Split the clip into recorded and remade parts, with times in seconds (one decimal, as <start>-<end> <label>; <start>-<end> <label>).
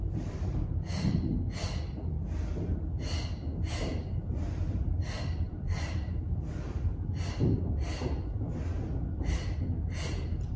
0.0-1.3 remade; 1.3-3.8 recorded; 3.8-4.2 remade; 4.2-4.8 recorded; 4.8-6.9 remade; 6.9-10.1 recorded; 10.1-10.6 remade